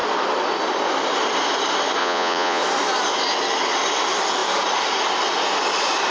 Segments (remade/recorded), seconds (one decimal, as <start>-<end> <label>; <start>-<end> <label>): 0.0-2.0 recorded; 2.0-2.6 remade; 2.6-6.1 recorded